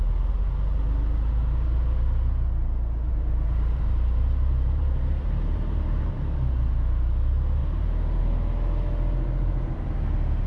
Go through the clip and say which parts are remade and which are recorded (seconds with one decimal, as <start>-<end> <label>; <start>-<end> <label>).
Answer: 0.0-3.1 recorded; 3.1-6.1 remade; 6.1-7.6 recorded; 7.6-8.2 remade; 8.2-10.5 recorded